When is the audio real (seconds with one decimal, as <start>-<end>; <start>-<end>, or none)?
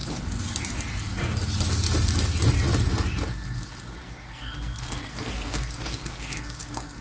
0.0-4.0